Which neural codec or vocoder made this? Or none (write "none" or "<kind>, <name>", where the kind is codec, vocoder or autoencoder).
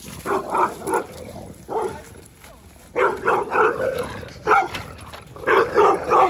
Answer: none